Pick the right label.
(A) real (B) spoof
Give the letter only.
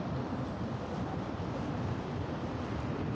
A